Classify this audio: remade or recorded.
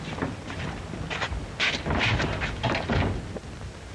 recorded